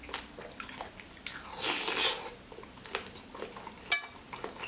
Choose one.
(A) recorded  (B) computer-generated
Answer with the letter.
A